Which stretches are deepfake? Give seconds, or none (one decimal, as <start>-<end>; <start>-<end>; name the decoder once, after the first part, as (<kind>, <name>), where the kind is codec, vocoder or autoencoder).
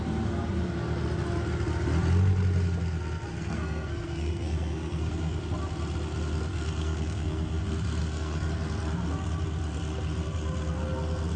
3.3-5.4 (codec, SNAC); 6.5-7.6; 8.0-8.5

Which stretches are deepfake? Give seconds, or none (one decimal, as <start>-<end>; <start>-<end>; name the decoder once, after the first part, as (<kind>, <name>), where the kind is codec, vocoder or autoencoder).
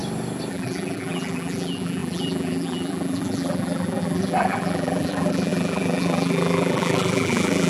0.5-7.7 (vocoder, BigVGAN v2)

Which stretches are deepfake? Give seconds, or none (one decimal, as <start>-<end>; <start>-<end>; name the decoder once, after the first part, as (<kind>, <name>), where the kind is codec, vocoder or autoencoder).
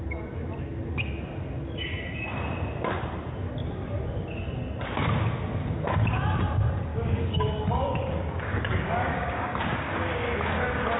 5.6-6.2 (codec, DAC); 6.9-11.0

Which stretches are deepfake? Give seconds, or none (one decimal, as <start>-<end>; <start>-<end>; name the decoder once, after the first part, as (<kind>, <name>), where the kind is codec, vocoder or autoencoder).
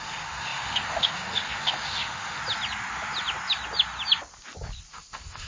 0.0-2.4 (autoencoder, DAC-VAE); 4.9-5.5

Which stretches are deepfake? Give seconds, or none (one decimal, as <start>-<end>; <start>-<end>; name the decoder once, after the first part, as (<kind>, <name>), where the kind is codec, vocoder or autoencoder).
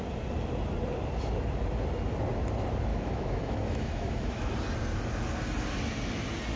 2.9-4.5 (autoencoder, DAC-VAE)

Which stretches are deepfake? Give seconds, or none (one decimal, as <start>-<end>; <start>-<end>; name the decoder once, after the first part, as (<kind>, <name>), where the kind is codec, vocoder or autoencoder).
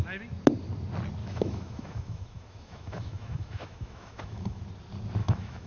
1.2-4.6 (autoencoder, DAC-VAE); 5.2-5.7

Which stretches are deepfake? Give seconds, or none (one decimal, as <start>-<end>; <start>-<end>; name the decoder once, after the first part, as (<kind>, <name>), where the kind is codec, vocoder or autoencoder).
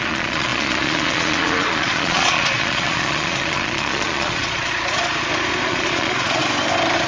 0.0-5.1 (vocoder, Vocos); 5.7-6.4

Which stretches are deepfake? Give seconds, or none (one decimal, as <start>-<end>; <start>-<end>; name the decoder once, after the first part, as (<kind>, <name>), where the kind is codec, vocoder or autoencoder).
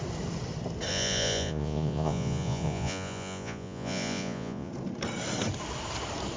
0.9-4.7 (vocoder, Vocos)